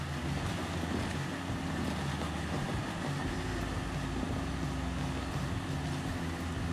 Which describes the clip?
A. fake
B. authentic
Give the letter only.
B